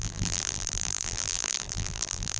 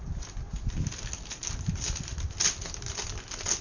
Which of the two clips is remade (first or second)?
first